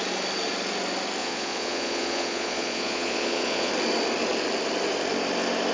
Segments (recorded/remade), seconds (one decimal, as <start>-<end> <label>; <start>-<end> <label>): 0.0-1.2 recorded; 1.2-3.7 remade; 3.7-5.7 recorded